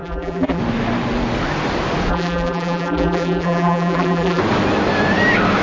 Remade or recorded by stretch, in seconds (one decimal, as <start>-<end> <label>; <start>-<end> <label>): 0.0-0.6 remade; 0.6-2.1 recorded; 2.1-4.4 remade; 4.4-5.6 recorded

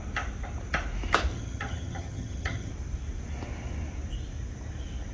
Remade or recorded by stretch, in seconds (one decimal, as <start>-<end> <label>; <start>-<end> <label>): 0.0-1.3 recorded; 1.3-2.7 remade; 2.7-5.1 recorded

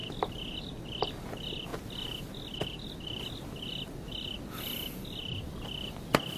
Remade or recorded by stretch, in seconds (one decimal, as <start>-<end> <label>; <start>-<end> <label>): 0.0-6.4 recorded

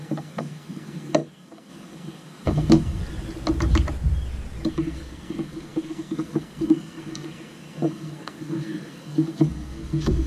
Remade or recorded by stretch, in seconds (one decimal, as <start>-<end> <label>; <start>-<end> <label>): 0.0-3.0 remade; 3.0-4.7 recorded; 4.7-10.3 remade

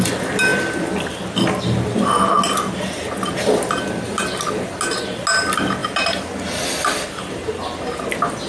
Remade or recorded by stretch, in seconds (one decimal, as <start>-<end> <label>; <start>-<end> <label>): 0.0-8.5 recorded